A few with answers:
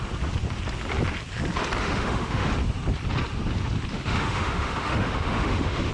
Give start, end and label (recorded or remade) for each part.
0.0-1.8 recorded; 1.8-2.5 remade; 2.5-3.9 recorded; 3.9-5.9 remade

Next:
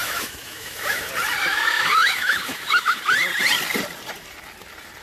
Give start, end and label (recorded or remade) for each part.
0.0-1.1 remade; 1.1-1.5 recorded; 1.5-3.0 remade; 3.0-5.0 recorded

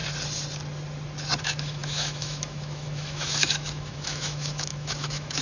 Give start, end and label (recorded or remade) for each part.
0.0-1.4 recorded; 1.4-5.4 remade

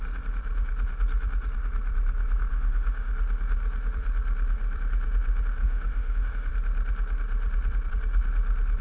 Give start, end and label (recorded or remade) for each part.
0.0-2.5 recorded; 2.5-3.1 remade; 3.1-5.6 recorded; 5.6-6.5 remade; 6.5-8.8 recorded

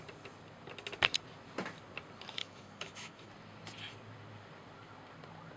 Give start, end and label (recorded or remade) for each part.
0.0-2.4 recorded; 2.4-3.3 remade; 3.3-5.6 recorded

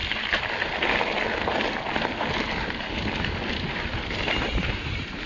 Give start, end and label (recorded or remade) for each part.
0.0-5.3 recorded